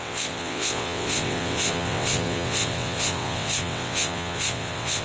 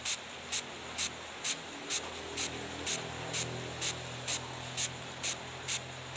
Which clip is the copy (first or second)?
first